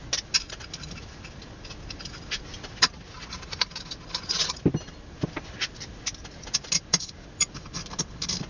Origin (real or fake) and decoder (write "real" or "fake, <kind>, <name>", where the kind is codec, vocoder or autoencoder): real